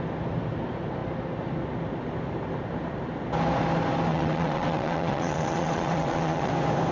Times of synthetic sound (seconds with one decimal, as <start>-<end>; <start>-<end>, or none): 4.1-6.5

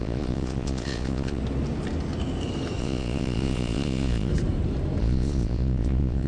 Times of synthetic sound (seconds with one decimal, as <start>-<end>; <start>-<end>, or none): 0.0-1.4; 2.8-4.3; 5.0-6.3